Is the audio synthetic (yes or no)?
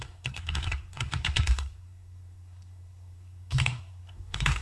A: yes